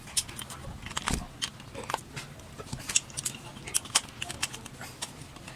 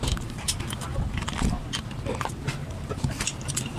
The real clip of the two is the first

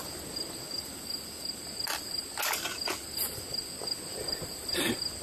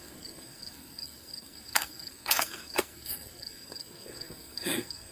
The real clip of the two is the first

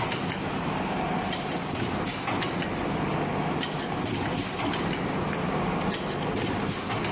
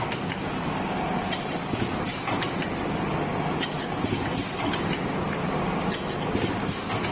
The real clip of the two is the first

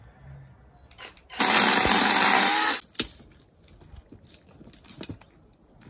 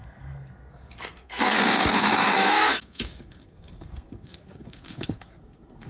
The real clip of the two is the first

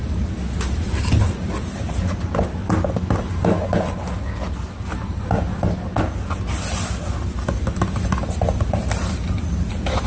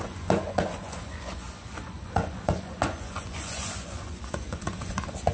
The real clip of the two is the first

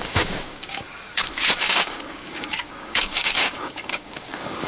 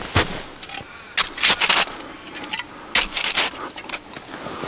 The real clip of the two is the second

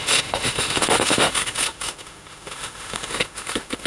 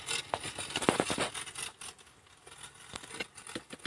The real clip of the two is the second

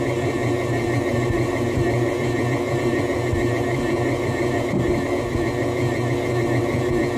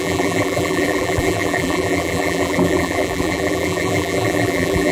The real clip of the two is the first